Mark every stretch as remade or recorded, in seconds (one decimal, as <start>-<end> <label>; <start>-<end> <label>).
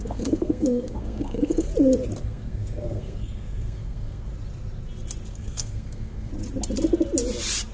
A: 0.0-1.7 remade; 1.7-2.2 recorded; 2.2-4.3 remade; 4.3-5.3 recorded; 5.3-6.3 remade; 6.3-7.7 recorded